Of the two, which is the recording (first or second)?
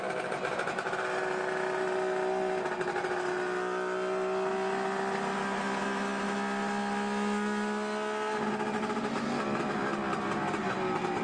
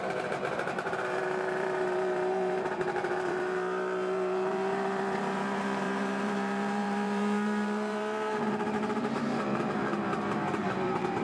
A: first